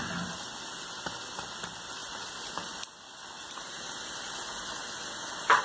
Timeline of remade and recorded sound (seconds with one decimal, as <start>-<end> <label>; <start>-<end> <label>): 0.0-5.6 recorded